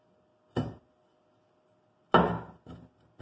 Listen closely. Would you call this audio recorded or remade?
recorded